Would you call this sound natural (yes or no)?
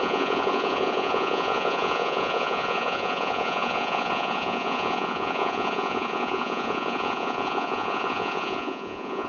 no